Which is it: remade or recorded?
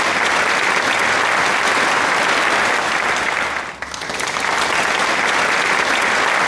recorded